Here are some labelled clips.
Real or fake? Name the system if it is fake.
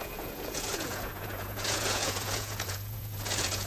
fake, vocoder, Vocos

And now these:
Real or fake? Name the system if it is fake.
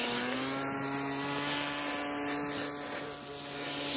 real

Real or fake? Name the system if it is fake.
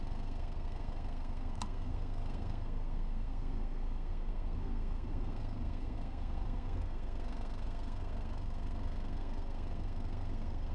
fake, codec, SNAC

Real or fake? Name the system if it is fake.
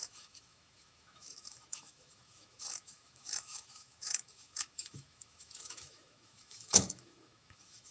fake, autoencoder, DAC-VAE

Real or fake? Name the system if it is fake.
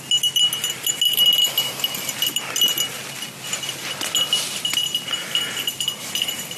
real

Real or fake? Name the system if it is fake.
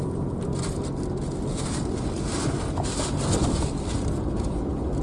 real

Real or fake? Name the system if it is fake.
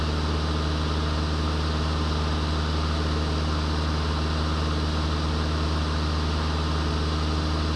real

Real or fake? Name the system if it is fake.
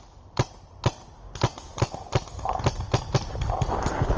real